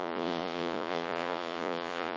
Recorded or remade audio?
remade